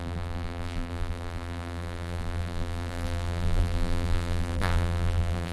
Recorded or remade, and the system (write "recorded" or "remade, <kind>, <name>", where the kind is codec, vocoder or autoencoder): remade, vocoder, BigVGAN v2